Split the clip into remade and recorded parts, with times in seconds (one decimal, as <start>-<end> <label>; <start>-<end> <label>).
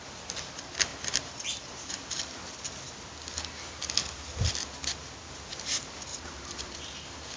0.0-0.9 recorded; 0.9-2.1 remade; 2.1-6.1 recorded; 6.1-6.8 remade; 6.8-7.4 recorded